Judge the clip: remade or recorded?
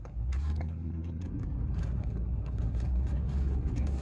remade